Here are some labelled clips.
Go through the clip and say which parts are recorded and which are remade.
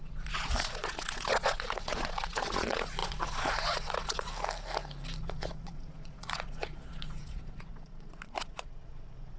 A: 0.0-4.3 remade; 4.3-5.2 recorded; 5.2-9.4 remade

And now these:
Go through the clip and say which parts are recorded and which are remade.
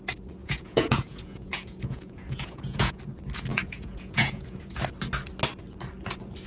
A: 0.0-0.4 recorded; 0.4-3.0 remade; 3.0-3.5 recorded; 3.5-4.8 remade; 4.8-6.5 recorded